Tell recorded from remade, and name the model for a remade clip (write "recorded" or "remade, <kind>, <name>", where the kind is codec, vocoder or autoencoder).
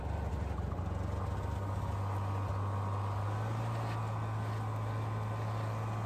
recorded